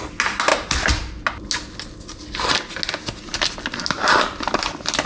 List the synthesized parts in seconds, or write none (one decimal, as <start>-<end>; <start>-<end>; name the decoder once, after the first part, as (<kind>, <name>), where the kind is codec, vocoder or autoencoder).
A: none